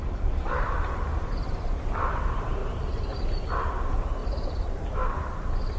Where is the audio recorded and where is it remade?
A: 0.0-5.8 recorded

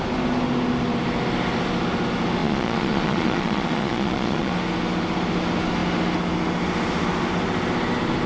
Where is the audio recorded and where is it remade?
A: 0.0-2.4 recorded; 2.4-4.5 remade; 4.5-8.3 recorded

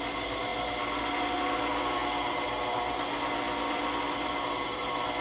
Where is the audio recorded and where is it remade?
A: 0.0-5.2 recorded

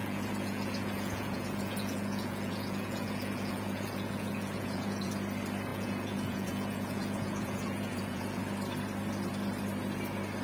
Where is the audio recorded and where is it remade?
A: 0.0-5.1 remade; 5.1-5.7 recorded; 5.7-8.4 remade; 8.4-10.4 recorded

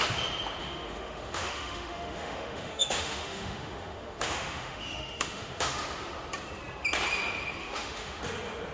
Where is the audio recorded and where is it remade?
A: 0.0-0.6 recorded; 0.6-5.8 remade; 5.8-7.6 recorded; 7.6-8.2 remade; 8.2-8.7 recorded